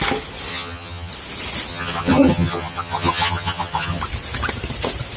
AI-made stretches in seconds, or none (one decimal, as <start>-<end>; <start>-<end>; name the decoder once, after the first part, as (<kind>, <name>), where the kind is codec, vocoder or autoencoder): 0.5-1.1 (vocoder, HiFi-GAN); 1.7-4.0